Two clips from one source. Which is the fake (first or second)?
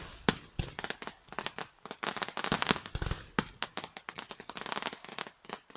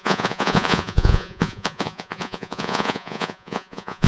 second